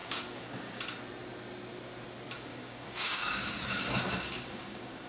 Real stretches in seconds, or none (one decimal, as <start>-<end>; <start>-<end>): 0.8-2.5